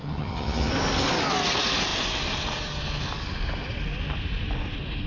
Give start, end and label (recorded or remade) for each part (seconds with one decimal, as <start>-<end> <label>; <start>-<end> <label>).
0.0-0.7 remade; 0.7-5.1 recorded